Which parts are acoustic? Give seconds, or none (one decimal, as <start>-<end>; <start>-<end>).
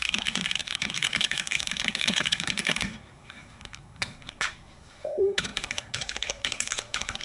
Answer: none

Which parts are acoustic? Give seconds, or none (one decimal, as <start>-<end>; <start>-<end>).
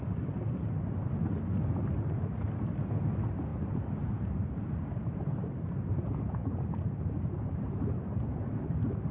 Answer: 0.0-3.5; 7.8-9.1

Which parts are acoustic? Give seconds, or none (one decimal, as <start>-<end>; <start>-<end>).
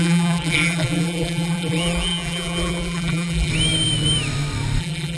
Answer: 3.5-4.8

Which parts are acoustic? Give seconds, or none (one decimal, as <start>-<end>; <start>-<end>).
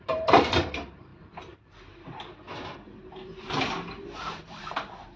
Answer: none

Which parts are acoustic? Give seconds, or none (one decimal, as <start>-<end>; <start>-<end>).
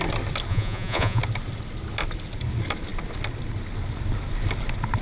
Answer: 0.0-0.5; 1.2-5.0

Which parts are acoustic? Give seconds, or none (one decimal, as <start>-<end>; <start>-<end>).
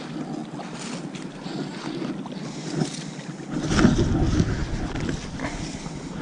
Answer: 0.0-6.2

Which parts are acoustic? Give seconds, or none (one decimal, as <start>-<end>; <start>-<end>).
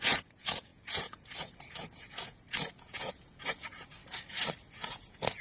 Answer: 4.0-4.8